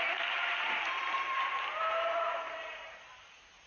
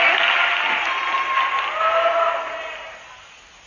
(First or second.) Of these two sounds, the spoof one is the first